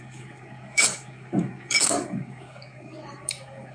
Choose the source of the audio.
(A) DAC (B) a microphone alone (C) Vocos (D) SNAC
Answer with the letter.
A